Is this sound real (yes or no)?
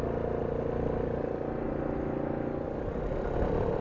yes